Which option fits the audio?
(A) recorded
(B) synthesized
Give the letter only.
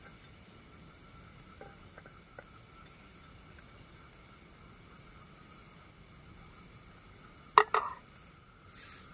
A